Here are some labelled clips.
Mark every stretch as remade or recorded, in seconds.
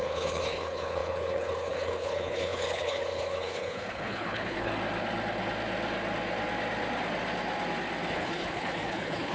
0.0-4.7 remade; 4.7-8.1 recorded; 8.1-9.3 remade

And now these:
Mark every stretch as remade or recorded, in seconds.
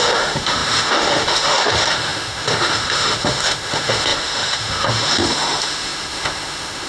0.0-6.9 remade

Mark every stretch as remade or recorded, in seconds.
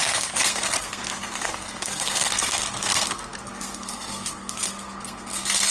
0.0-5.7 remade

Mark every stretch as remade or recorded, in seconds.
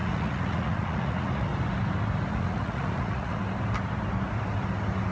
0.0-1.5 remade; 1.5-2.3 recorded; 2.3-3.4 remade; 3.4-5.1 recorded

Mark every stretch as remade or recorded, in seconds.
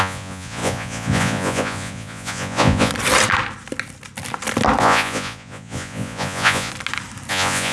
0.0-2.9 remade; 2.9-4.8 recorded; 4.8-6.7 remade; 6.7-7.3 recorded; 7.3-7.7 remade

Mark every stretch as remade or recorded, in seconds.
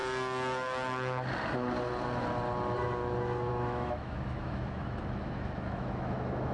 0.0-3.5 recorded; 3.5-6.5 remade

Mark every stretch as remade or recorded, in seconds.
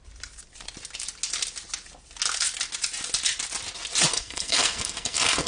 0.0-4.1 recorded; 4.1-5.5 remade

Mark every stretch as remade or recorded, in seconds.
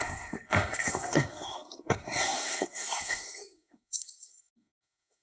0.0-5.2 remade